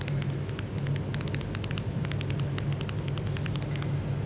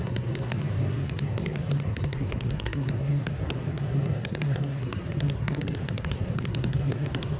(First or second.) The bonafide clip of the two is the first